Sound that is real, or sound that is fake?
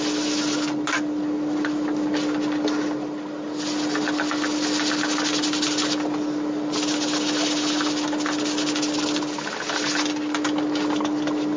real